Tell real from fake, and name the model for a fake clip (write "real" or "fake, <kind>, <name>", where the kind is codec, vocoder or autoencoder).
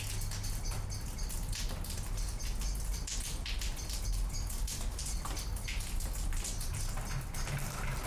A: real